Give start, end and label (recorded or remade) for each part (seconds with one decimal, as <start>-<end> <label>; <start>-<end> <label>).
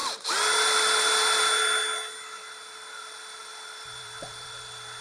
0.0-3.0 recorded; 3.0-5.0 remade